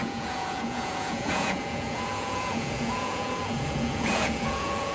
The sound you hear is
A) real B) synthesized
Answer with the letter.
B